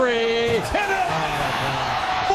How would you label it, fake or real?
fake